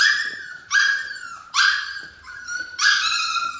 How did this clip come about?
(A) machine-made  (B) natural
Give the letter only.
A